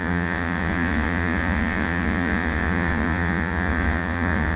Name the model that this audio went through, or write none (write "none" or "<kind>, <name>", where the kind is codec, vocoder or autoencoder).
vocoder, Vocos